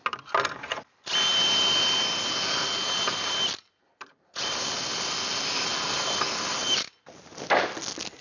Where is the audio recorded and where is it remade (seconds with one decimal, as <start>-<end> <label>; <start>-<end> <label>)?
0.0-8.2 recorded